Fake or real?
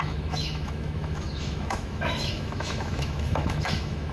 fake